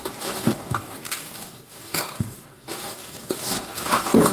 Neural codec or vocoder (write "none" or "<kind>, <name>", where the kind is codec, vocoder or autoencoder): codec, DAC